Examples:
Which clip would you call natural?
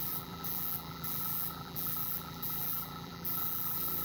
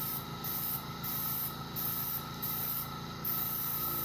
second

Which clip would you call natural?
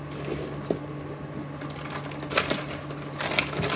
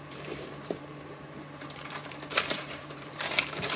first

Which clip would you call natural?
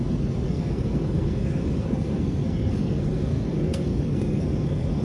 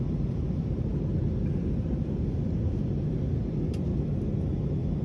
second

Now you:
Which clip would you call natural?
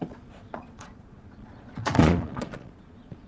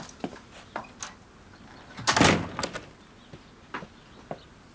second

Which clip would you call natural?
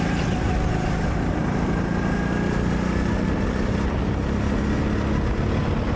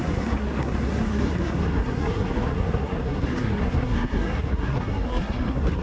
first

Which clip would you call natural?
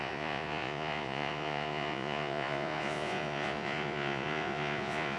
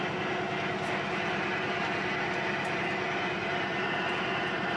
second